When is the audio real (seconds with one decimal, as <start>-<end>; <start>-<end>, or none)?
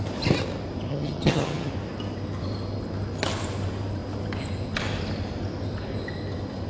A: 0.0-0.9; 1.7-6.7